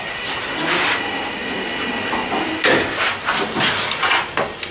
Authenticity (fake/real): real